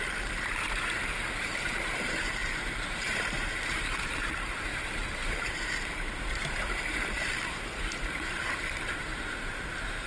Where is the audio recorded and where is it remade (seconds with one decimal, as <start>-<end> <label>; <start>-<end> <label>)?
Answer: 0.0-10.1 remade